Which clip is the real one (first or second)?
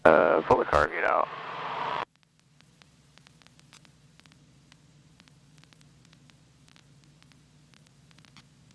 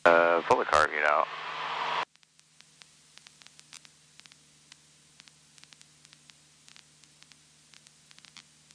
second